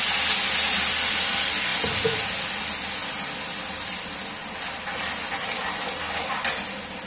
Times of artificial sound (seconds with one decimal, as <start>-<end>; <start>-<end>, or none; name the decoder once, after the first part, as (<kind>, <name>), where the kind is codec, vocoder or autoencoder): none